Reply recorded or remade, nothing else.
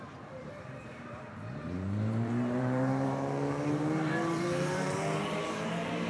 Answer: remade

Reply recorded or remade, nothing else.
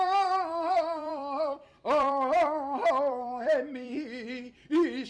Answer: remade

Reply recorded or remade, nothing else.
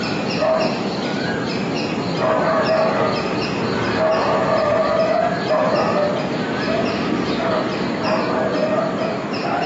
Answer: recorded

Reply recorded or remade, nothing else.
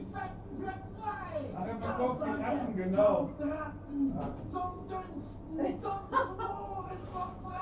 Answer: remade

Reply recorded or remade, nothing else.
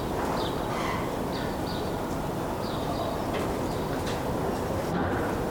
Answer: recorded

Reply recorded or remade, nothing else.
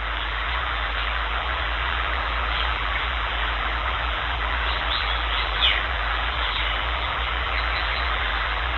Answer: remade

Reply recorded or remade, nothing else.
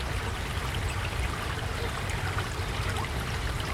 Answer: remade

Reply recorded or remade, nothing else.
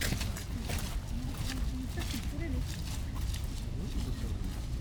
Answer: recorded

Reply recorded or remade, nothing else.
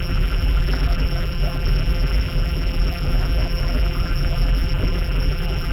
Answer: remade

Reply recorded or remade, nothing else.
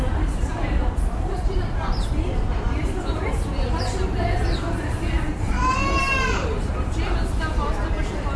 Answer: remade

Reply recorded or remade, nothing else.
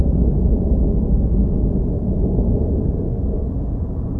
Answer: recorded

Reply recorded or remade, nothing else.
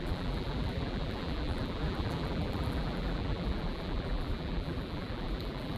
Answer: remade